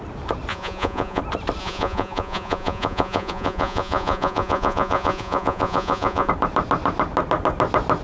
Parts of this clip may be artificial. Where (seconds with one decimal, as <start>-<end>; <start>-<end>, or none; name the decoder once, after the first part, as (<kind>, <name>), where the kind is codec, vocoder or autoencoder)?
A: 0.5-1.2 (vocoder, Vocos); 1.6-6.3